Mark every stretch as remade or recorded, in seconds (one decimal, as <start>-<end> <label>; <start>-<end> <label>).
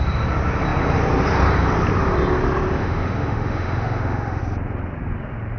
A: 0.0-2.8 recorded; 2.8-4.4 remade; 4.4-5.6 recorded